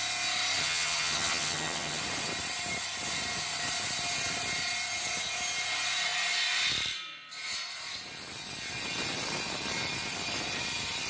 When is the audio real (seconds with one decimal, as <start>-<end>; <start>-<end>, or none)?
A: 0.0-0.6; 2.0-11.1